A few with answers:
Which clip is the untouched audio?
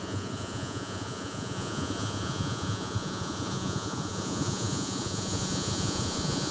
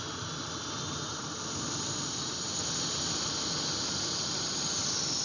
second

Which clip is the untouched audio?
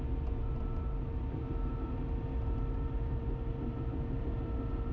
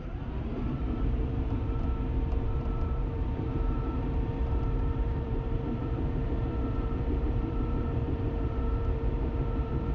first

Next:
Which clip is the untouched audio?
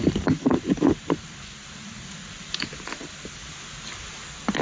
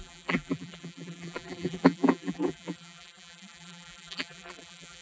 first